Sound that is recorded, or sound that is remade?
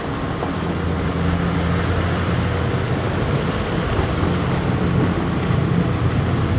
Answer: recorded